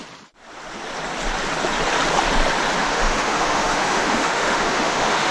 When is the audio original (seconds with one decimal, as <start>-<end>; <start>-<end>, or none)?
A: 0.0-2.8